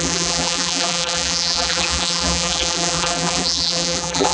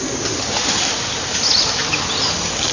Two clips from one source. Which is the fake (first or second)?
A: first